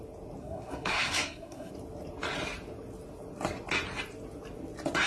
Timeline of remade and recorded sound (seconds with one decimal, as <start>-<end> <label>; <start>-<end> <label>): 0.0-0.4 recorded; 0.4-1.7 remade; 1.7-5.1 recorded